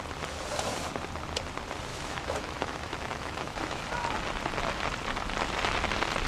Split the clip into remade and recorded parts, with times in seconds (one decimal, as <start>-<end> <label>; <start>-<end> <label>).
0.0-1.9 recorded; 1.9-3.8 remade; 3.8-6.3 recorded